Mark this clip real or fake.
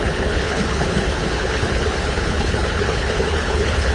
fake